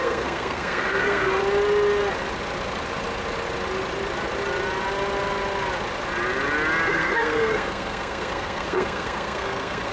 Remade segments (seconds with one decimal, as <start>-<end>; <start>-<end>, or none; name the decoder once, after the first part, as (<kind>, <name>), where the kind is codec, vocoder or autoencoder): 0.0-1.3 (codec, SNAC); 6.9-9.9

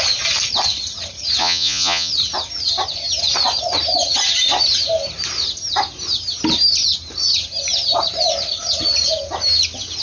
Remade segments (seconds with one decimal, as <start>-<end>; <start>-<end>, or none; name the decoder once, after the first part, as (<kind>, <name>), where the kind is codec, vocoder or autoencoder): 1.4-2.1 (vocoder, Vocos)